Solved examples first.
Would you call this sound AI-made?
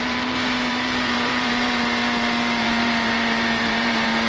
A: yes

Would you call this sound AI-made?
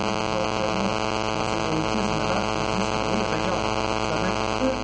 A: no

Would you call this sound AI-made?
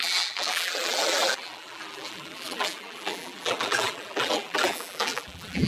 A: yes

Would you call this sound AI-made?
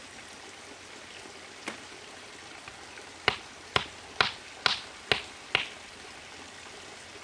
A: no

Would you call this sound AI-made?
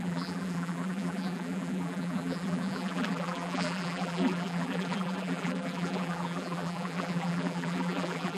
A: yes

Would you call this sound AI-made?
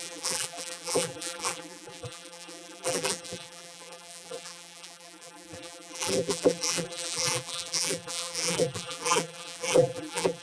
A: yes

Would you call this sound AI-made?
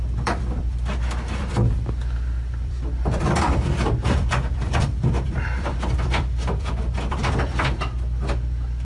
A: yes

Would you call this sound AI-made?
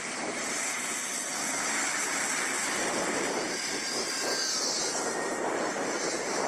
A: yes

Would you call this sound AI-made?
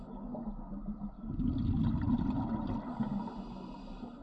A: no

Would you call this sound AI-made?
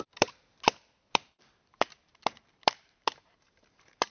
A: yes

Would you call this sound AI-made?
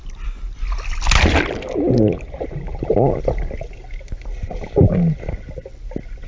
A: no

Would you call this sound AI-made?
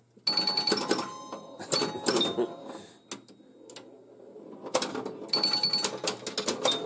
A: no